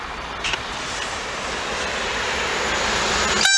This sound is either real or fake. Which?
real